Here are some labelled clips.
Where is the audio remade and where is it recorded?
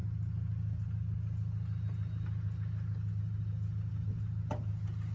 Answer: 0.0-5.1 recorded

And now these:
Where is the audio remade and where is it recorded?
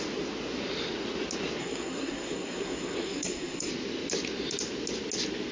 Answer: 0.0-1.6 recorded; 1.6-3.7 remade; 3.7-5.5 recorded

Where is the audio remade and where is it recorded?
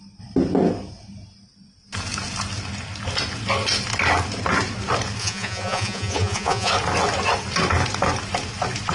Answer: 0.0-5.2 recorded; 5.2-6.7 remade; 6.7-8.9 recorded